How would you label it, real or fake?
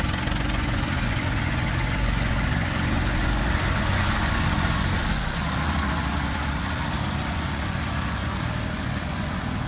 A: fake